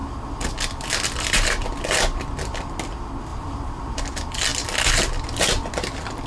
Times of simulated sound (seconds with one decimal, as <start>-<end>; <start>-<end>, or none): 3.3-4.0